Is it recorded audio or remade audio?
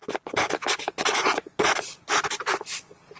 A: recorded